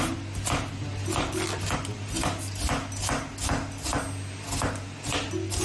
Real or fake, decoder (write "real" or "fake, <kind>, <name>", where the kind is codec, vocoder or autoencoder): real